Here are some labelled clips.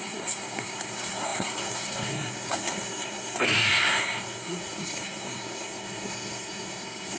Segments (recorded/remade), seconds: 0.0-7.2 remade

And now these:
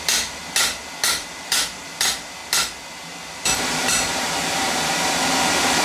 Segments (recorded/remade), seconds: 0.0-0.4 remade; 0.4-1.1 recorded; 1.1-2.4 remade; 2.4-3.3 recorded; 3.3-5.8 remade

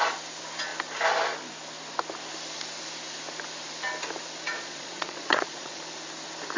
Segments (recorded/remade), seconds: 0.0-4.5 recorded; 4.5-5.8 remade; 5.8-6.6 recorded

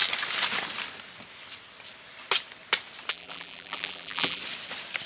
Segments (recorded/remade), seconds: 0.0-3.1 recorded; 3.1-4.4 remade; 4.4-5.1 recorded

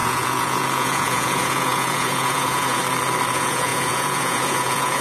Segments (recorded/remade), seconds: 0.0-2.8 remade; 2.8-3.3 recorded; 3.3-5.0 remade

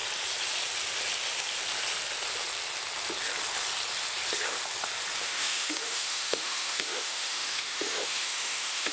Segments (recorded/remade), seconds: 0.0-5.2 recorded; 5.2-8.9 remade